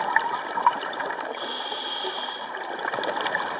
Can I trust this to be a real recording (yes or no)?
no